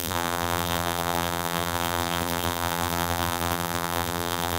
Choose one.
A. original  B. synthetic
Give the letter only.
B